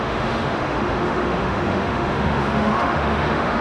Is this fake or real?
fake